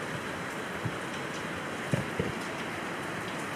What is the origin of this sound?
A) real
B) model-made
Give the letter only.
A